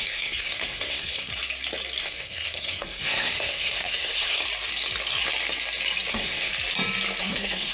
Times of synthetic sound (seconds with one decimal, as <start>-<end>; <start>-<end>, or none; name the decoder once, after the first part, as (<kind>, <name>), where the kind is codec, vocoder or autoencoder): 0.0-1.3 (codec, SNAC); 2.0-4.4; 6.1-6.5; 7.2-7.7